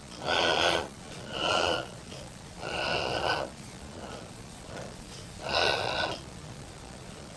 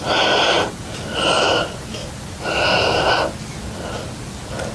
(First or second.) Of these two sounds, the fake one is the first